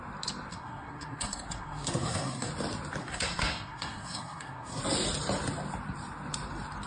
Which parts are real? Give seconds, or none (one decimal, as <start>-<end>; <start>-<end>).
0.0-0.5; 2.5-3.0; 4.8-6.9